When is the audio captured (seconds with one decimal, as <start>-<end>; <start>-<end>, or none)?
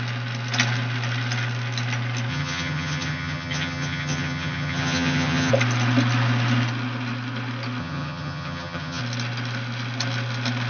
0.0-2.3; 5.5-7.8; 9.0-10.7